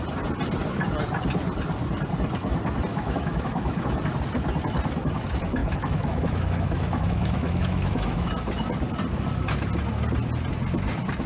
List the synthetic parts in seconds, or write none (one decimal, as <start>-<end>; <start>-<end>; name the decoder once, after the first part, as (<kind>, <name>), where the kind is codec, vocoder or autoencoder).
2.9-4.0 (autoencoder, DAC-VAE); 5.6-8.3